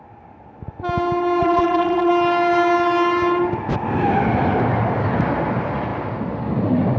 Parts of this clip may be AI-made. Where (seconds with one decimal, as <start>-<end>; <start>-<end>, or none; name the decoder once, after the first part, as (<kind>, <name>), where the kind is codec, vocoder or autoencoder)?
1.4-2.1 (vocoder, BigVGAN v2)